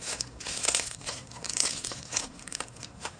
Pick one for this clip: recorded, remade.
remade